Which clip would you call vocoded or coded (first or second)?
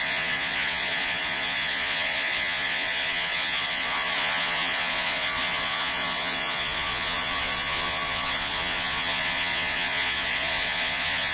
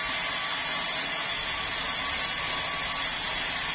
first